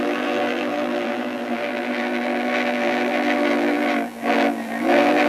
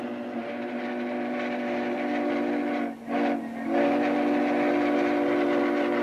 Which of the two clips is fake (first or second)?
first